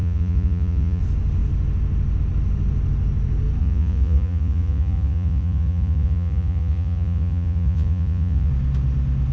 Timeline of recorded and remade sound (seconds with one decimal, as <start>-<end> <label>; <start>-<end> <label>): 0.0-1.0 remade; 1.0-3.6 recorded; 3.6-8.5 remade; 8.5-9.3 recorded